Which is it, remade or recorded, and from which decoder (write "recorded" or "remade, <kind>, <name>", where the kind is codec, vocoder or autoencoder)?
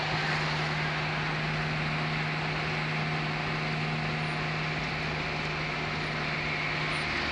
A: recorded